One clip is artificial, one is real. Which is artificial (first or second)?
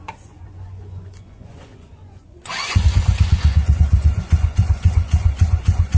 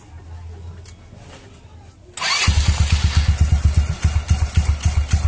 first